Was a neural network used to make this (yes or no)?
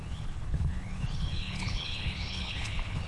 yes